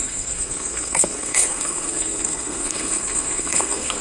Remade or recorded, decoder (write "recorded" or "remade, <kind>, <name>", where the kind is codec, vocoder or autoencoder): remade, codec, SNAC